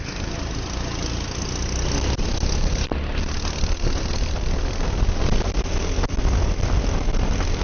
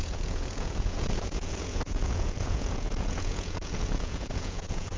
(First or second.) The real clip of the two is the first